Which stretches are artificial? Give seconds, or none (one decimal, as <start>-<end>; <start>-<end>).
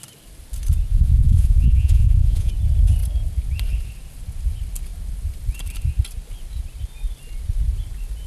0.9-2.5